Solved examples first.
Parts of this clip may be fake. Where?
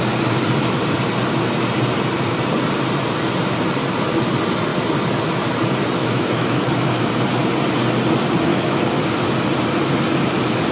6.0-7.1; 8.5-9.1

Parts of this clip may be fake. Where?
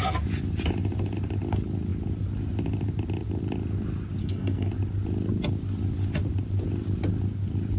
4.2-4.7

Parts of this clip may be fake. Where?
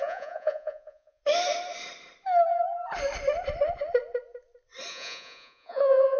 0.0-1.2; 4.9-6.2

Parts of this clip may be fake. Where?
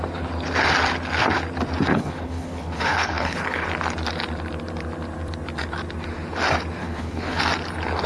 1.9-3.7; 6.8-7.4